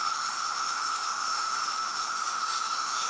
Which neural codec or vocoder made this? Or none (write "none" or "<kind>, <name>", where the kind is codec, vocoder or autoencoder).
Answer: autoencoder, DAC-VAE